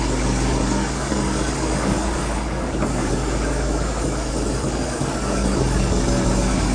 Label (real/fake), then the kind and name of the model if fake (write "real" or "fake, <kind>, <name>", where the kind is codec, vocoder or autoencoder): fake, codec, DAC